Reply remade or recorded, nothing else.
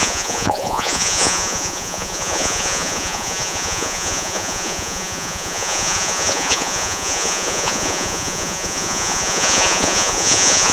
remade